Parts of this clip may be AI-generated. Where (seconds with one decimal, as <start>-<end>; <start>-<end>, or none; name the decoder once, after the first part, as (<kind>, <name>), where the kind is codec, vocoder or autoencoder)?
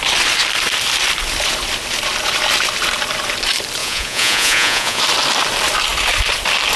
3.8-5.0 (vocoder, Vocos)